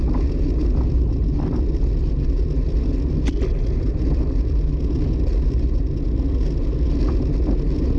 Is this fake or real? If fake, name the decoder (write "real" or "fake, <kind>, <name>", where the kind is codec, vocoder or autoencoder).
real